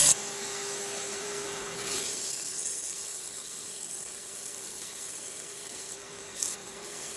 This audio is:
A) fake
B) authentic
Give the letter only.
A